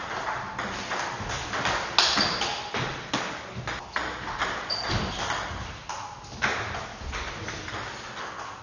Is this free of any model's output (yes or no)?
yes